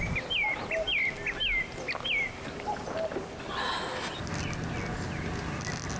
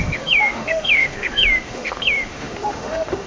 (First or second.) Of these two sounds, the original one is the first